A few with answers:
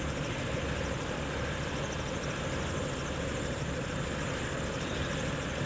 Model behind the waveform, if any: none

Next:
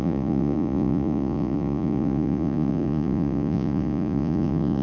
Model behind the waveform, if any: vocoder, Vocos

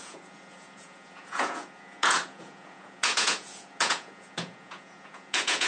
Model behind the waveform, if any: vocoder, Vocos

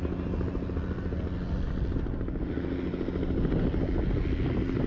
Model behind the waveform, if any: none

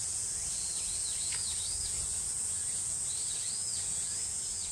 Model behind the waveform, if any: vocoder, Vocos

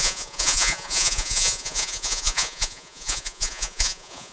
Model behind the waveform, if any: vocoder, Vocos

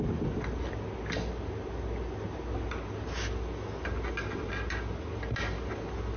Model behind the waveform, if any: none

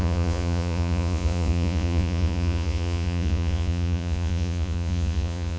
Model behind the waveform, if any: vocoder, Vocos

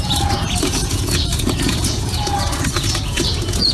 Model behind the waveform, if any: vocoder, Vocos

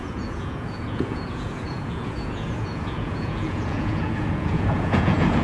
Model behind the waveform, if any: vocoder, Vocos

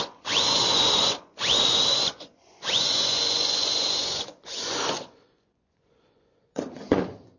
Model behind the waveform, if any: vocoder, Vocos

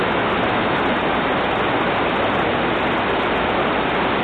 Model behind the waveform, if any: none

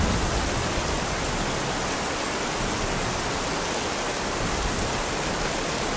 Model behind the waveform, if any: none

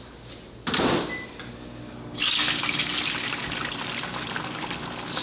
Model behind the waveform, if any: none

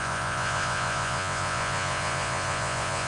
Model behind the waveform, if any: vocoder, Vocos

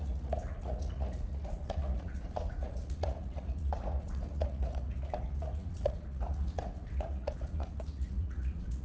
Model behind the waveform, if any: vocoder, Vocos